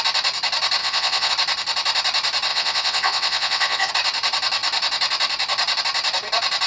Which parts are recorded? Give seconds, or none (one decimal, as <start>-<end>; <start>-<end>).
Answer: 0.0-0.8; 1.3-2.5; 3.9-6.7